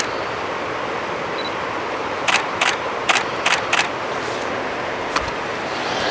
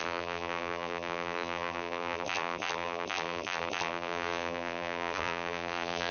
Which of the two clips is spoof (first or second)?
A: second